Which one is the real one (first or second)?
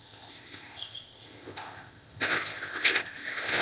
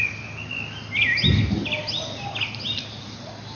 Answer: second